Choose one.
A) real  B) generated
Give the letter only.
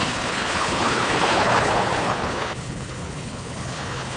B